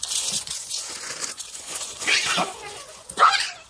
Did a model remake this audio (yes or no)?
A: yes